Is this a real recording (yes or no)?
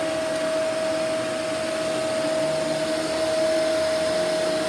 yes